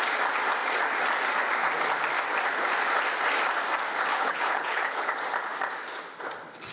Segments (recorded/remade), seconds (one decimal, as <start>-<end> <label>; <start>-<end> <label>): 0.0-4.1 recorded; 4.1-5.1 remade; 5.1-6.7 recorded